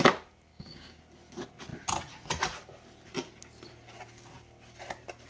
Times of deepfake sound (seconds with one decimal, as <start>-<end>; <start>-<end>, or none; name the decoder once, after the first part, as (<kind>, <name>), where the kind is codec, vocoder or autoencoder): 0.5-1.0 (codec, DAC)